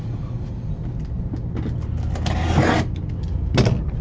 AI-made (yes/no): no